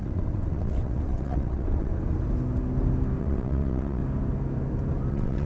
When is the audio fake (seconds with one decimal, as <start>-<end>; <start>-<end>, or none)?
0.0-1.9; 3.2-4.0; 5.1-5.5